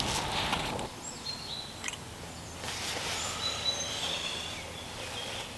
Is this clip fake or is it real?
real